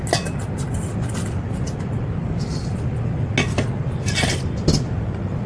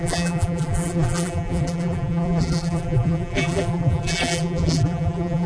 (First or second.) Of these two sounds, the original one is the first